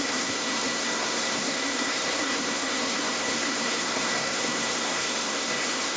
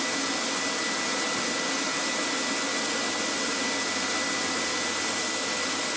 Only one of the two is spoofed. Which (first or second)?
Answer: first